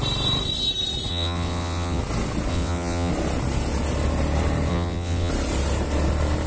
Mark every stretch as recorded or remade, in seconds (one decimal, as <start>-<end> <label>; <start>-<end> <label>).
0.0-1.1 recorded; 1.1-2.0 remade; 2.0-2.5 recorded; 2.5-3.1 remade; 3.1-4.7 recorded; 4.7-5.3 remade; 5.3-6.5 recorded

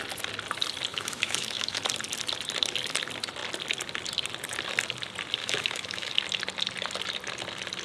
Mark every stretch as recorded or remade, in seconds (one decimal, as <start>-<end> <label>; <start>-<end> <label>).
0.0-0.9 recorded; 0.9-1.8 remade; 1.8-5.4 recorded; 5.4-6.1 remade; 6.1-7.8 recorded